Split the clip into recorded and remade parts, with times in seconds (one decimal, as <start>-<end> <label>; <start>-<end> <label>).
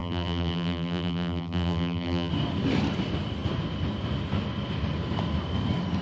0.0-2.3 remade; 2.3-6.0 recorded